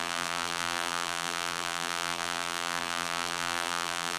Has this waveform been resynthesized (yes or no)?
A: yes